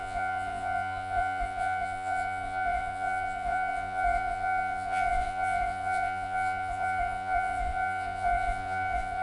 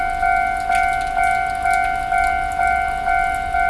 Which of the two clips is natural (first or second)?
second